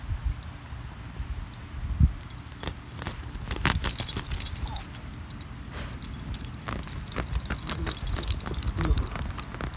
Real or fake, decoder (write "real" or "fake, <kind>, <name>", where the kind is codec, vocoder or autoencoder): real